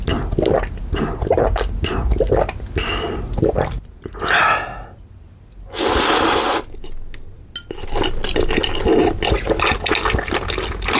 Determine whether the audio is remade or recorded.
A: recorded